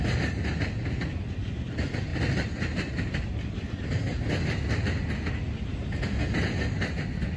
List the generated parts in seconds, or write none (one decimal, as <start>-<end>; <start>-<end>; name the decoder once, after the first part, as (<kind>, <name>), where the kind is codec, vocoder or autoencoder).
none